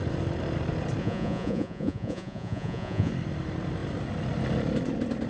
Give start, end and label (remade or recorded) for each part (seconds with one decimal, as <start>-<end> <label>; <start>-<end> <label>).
0.0-1.0 recorded; 1.0-3.1 remade; 3.1-5.3 recorded